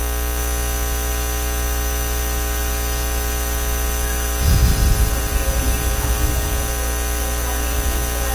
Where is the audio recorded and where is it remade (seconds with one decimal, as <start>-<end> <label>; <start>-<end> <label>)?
0.0-4.7 recorded; 4.7-5.6 remade; 5.6-8.3 recorded